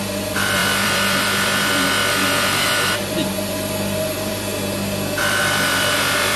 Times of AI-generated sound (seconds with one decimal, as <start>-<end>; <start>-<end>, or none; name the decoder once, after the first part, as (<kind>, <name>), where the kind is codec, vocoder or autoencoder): 0.0-2.0 (vocoder, BigVGAN v2); 2.7-4.5; 5.2-6.4